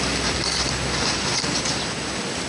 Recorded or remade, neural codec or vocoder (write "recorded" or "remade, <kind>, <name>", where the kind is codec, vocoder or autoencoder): recorded